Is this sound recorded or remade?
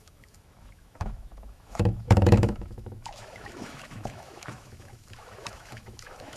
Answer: remade